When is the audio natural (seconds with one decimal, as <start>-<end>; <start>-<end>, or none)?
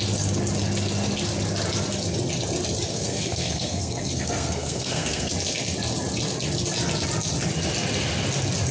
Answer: 0.0-2.9; 5.3-8.7